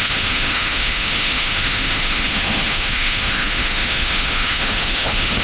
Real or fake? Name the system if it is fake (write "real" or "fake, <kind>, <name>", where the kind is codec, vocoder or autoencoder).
fake, autoencoder, DAC-VAE